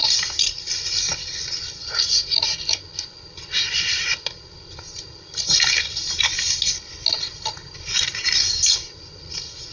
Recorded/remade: recorded